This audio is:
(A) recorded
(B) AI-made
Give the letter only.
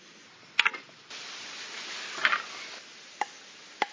A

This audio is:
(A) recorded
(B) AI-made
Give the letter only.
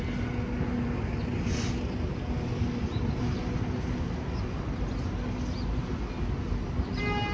A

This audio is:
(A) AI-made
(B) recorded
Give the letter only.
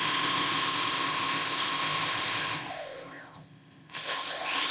A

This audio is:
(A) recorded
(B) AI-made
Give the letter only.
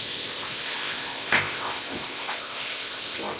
B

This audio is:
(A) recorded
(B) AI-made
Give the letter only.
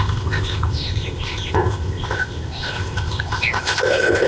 B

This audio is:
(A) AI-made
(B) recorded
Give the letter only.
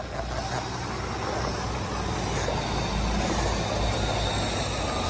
B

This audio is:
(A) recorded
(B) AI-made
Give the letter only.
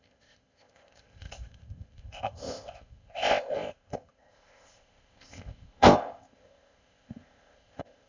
B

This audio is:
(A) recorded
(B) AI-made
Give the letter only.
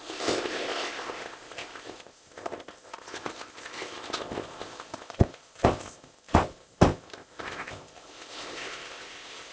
B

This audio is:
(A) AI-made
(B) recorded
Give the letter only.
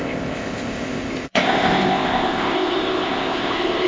A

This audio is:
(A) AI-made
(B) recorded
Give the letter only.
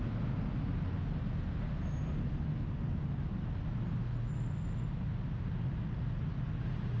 B